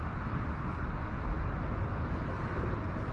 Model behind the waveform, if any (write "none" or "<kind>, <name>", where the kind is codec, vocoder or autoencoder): none